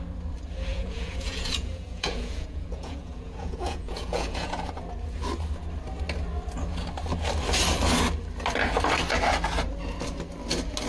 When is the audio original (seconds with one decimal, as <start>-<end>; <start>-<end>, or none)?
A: 0.0-0.7; 4.7-10.9